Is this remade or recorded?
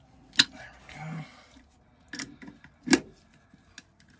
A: recorded